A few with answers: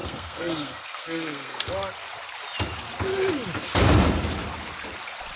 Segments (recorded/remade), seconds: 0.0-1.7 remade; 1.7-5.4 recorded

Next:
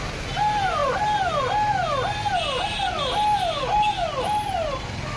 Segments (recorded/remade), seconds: 0.0-5.2 recorded

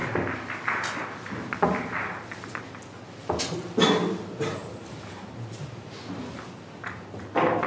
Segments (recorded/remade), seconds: 0.0-7.7 recorded

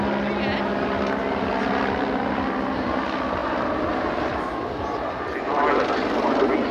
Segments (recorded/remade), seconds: 0.0-6.7 recorded